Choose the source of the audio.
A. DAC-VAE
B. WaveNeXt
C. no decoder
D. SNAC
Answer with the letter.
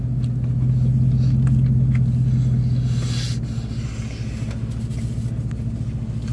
C